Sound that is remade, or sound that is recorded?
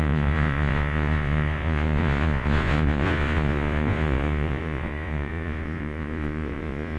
remade